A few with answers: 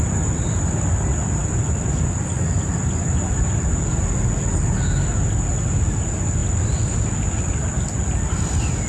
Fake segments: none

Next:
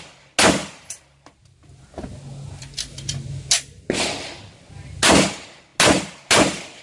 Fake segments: none

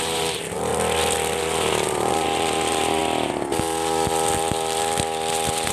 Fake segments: 0.0-0.7 (vocoder, BigVGAN v2); 1.4-3.0

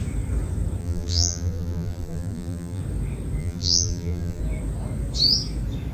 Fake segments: 0.8-2.8 (vocoder, BigVGAN v2); 3.4-4.4

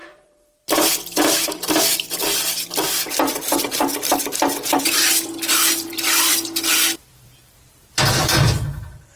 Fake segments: 0.0-4.8 (vocoder, BigVGAN v2); 5.9-8.6

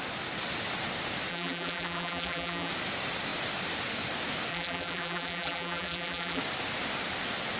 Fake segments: 1.3-2.7 (vocoder, BigVGAN v2); 4.5-6.4

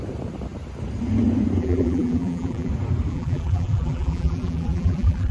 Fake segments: 1.6-2.7 (vocoder, BigVGAN v2); 3.1-5.3

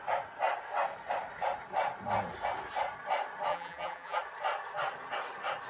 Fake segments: 3.5-4.2 (vocoder, BigVGAN v2)